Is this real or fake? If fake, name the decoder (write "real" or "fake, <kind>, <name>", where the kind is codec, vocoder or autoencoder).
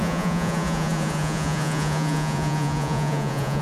fake, vocoder, Vocos